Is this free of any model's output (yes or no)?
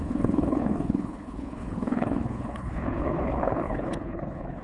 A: no